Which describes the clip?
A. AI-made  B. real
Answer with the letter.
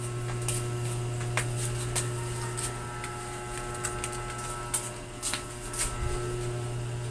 B